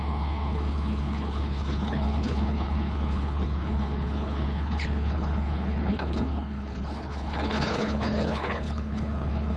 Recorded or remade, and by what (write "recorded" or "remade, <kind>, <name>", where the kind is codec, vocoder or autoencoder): remade, codec, HILCodec